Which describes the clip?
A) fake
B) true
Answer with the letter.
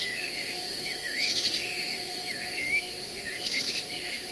A